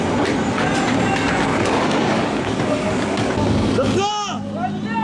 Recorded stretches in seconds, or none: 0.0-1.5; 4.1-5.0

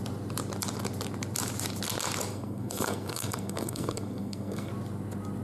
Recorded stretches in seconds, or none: 0.0-2.3; 4.7-5.4